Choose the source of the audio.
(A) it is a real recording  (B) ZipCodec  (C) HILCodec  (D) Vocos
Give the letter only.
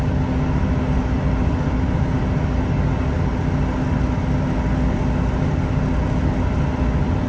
A